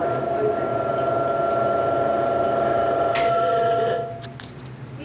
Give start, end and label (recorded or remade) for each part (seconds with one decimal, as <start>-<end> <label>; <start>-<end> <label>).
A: 0.0-5.0 recorded